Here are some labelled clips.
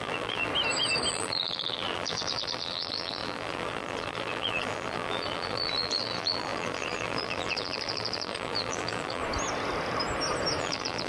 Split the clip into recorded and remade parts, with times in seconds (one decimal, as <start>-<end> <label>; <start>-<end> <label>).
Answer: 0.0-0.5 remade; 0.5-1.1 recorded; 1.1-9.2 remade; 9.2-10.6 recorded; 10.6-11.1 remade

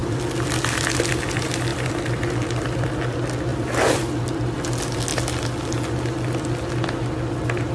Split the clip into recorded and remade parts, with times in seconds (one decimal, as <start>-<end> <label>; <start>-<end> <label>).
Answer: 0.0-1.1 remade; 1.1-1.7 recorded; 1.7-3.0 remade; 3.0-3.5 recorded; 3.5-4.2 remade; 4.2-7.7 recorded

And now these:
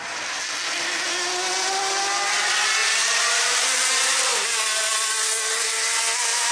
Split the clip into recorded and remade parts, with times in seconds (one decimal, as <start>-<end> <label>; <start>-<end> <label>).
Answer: 0.0-2.8 recorded; 2.8-3.9 remade; 3.9-6.5 recorded

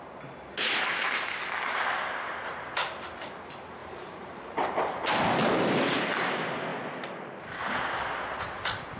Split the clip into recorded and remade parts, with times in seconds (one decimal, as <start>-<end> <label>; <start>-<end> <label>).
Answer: 0.0-3.8 recorded; 3.8-5.2 remade; 5.2-9.0 recorded

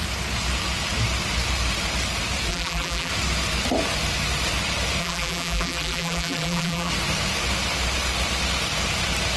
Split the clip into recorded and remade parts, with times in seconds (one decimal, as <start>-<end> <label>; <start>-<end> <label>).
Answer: 0.0-2.5 recorded; 2.5-3.1 remade; 3.1-5.0 recorded; 5.0-6.9 remade; 6.9-9.4 recorded